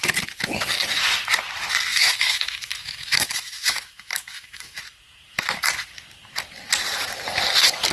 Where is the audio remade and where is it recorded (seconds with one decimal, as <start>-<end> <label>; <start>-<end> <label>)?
0.0-1.9 recorded; 1.9-4.8 remade; 4.8-7.9 recorded